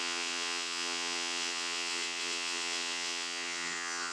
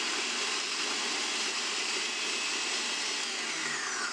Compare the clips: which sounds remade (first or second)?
first